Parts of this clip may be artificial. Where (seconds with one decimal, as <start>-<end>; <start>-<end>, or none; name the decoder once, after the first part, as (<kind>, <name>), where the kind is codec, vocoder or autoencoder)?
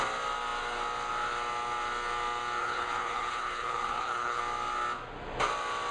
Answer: 2.6-4.4 (codec, HILCodec)